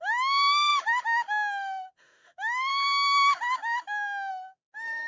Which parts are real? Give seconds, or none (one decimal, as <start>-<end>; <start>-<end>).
2.7-4.3

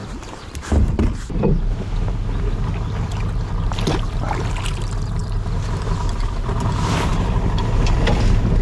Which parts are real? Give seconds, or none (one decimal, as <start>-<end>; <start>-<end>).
0.0-8.6

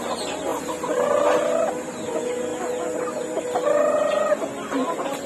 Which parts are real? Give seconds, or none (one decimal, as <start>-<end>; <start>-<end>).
0.0-5.3

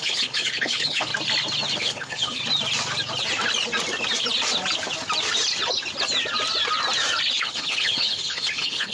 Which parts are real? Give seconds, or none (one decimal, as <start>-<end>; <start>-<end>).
1.1-1.8; 2.4-7.4

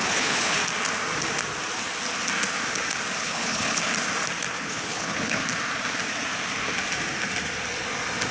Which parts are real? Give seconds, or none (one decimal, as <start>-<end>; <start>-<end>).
0.6-3.2; 3.8-4.5; 5.4-8.3

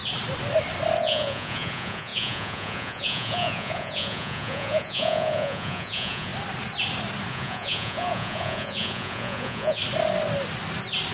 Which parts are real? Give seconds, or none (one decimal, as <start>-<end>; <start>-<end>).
0.0-1.0; 6.3-7.3; 9.8-11.1

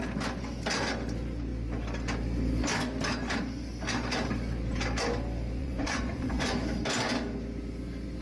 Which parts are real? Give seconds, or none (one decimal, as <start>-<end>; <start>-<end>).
0.0-5.6; 6.5-8.2

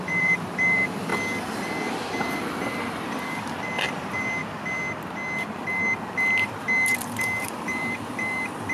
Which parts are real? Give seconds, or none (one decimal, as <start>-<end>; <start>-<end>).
1.1-2.6; 4.4-7.4